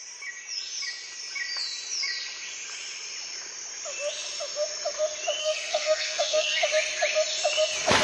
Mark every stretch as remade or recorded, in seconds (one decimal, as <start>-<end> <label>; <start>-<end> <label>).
0.0-5.4 recorded; 5.4-6.7 remade; 6.7-8.0 recorded